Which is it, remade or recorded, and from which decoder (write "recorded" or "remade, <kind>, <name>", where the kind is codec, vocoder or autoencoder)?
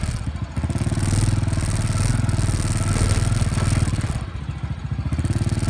recorded